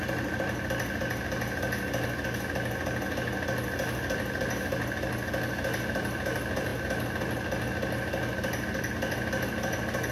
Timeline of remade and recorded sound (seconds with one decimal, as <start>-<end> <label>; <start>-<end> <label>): 0.0-10.1 recorded